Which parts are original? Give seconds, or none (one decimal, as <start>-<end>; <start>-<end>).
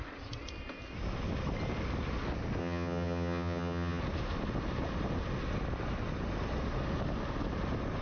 0.0-2.6; 4.0-8.0